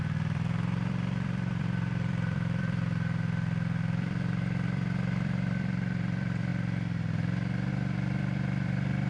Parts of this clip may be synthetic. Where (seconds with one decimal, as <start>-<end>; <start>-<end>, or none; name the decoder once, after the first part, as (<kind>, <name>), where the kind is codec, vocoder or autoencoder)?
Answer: 0.0-6.5 (vocoder, BigVGAN v2); 7.7-9.1

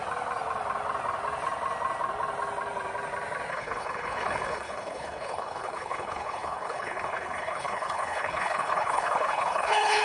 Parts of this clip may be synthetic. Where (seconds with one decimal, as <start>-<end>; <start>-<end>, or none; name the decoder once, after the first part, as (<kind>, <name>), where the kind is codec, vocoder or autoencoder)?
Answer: 3.5-10.0 (codec, HILCodec)

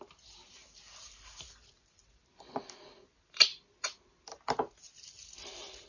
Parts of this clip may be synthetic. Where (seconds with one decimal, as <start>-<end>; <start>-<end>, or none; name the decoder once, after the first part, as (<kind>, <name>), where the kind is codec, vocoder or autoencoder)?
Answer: none